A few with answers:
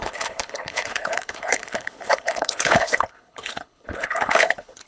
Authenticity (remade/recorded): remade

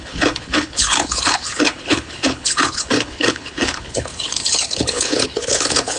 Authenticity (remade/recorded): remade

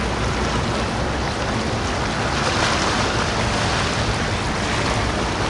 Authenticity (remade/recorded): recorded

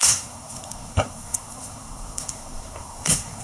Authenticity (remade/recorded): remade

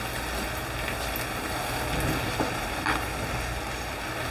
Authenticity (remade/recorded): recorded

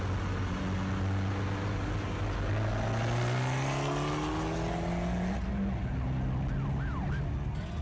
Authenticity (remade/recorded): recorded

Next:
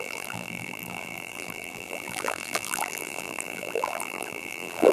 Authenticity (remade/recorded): remade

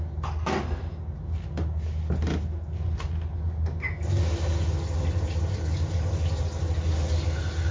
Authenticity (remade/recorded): recorded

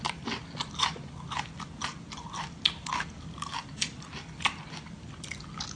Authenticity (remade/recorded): recorded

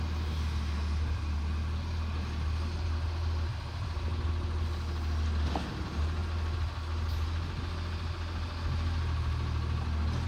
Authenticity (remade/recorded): recorded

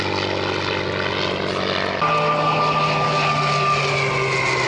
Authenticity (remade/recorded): recorded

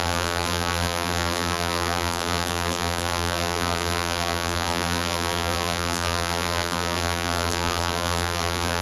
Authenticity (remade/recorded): remade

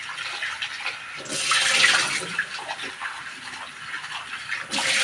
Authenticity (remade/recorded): recorded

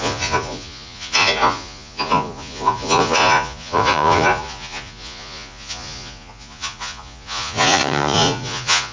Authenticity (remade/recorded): remade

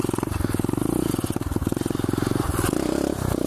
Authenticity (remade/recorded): recorded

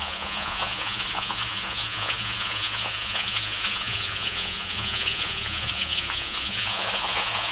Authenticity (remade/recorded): remade